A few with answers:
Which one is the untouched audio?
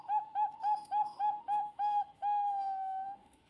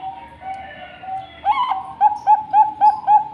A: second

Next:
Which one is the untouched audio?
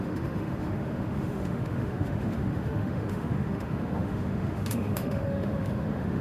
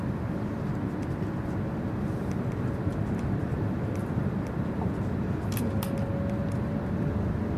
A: second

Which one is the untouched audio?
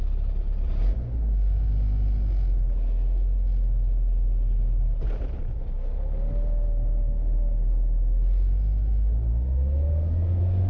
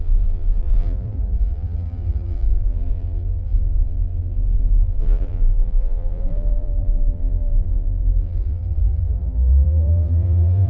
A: first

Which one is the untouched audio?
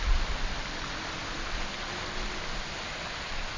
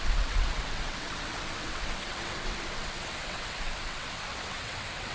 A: first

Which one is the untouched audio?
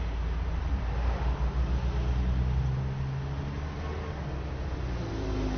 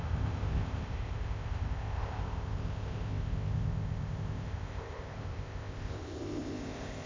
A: first